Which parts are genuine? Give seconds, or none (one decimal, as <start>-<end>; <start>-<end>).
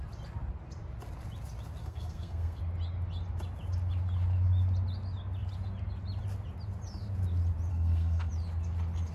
0.0-1.8; 2.6-7.7; 8.3-9.1